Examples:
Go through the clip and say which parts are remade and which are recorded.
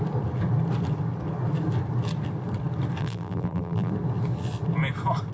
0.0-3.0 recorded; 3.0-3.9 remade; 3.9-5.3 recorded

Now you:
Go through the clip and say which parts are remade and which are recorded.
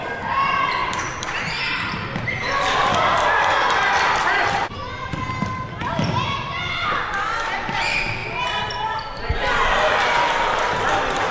0.0-0.8 recorded; 0.8-1.5 remade; 1.5-8.2 recorded; 8.2-11.3 remade